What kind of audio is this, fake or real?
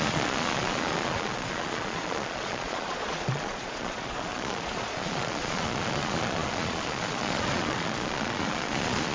fake